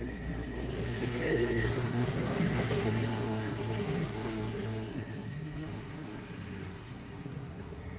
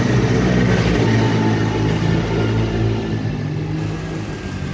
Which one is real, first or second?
second